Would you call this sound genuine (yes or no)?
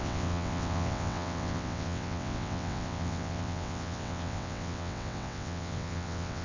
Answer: no